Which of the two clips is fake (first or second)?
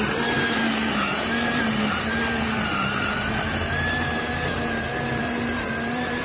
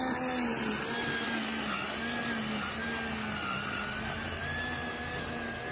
first